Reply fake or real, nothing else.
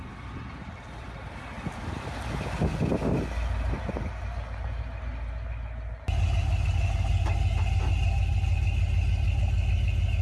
real